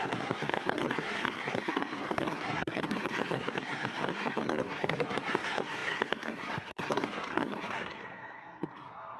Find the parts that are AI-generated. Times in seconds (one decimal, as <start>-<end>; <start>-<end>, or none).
0.0-9.2